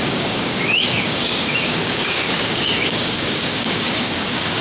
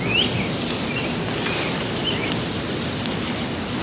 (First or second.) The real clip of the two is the second